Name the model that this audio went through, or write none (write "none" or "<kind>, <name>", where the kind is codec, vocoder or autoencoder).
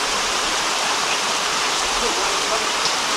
vocoder, BigVGAN v2